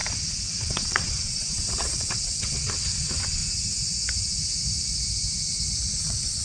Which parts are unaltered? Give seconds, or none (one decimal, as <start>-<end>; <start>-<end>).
0.0-0.6; 3.4-6.0